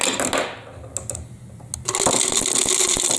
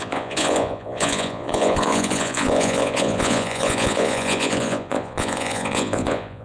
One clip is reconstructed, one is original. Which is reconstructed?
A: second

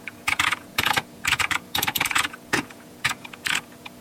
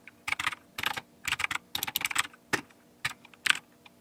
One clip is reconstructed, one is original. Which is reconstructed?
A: first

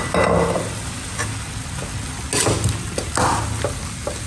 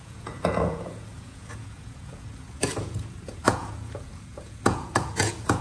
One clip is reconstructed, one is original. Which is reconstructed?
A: second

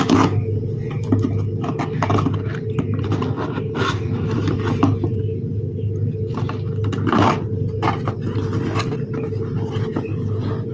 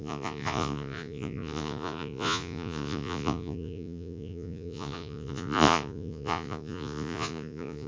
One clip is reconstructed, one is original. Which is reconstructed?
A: second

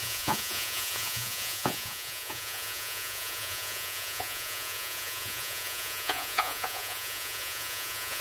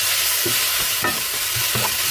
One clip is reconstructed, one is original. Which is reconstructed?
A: first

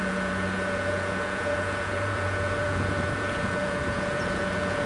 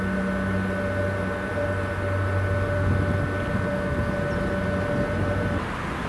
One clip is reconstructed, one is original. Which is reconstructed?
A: first